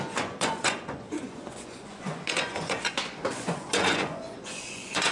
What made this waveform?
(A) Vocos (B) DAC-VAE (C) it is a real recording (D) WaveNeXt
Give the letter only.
A